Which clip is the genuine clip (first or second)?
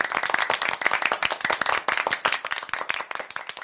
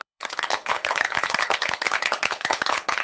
first